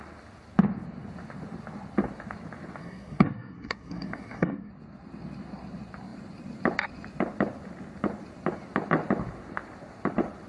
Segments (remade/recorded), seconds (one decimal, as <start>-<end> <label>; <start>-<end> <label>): 0.0-2.8 recorded; 2.8-4.7 remade; 4.7-10.5 recorded